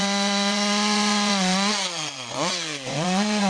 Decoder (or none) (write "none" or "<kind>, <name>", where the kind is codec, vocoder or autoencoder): vocoder, Vocos